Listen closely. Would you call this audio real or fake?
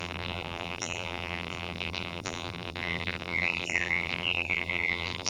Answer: fake